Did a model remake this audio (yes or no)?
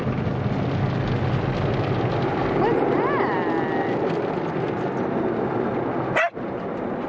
no